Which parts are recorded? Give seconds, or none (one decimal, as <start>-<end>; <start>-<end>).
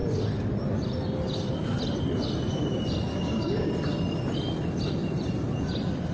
0.0-3.1; 3.7-6.1